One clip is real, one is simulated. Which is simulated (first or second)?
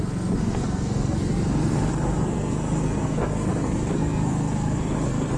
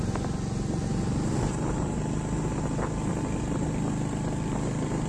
first